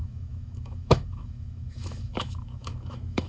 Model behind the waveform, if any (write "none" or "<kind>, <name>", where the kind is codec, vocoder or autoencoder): autoencoder, DAC-VAE